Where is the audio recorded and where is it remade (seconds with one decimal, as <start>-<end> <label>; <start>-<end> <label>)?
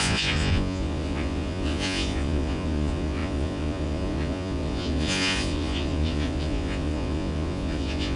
0.0-8.2 remade